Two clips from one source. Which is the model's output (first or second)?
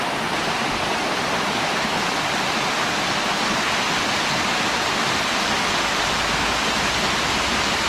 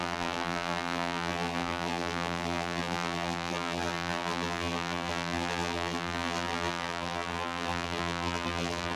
second